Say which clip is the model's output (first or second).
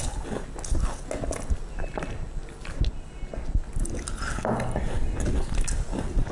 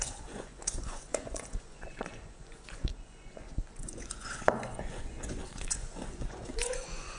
second